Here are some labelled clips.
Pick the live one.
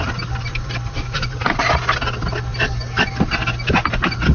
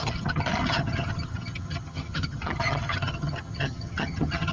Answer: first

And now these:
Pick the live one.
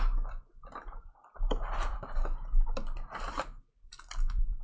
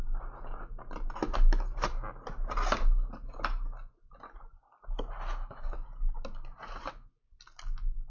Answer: second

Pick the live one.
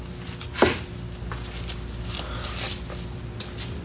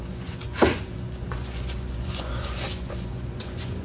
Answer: first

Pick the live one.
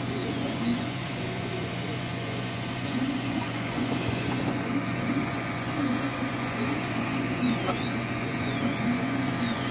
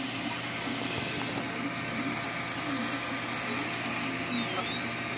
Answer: second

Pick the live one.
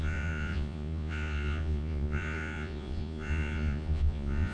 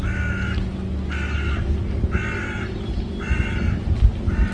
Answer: second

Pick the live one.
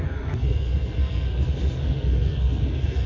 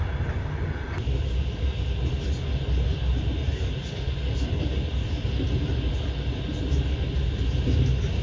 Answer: second